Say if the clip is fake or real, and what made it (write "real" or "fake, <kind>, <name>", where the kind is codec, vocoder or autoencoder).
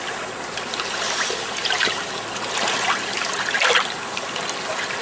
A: real